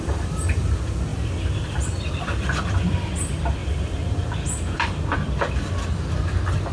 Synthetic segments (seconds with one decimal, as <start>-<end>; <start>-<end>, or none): 0.0-6.7